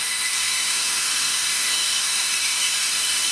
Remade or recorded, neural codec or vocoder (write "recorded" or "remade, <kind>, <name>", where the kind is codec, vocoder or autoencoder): remade, autoencoder, DAC-VAE